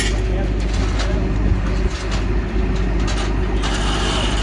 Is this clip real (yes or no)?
yes